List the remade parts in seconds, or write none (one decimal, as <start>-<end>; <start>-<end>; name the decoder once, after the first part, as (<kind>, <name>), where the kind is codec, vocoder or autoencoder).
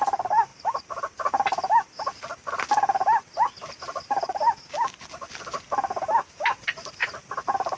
none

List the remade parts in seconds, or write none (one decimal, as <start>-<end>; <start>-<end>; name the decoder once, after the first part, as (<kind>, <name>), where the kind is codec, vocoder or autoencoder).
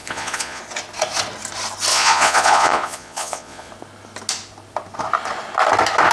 0.0-0.6 (vocoder, Vocos); 1.9-3.7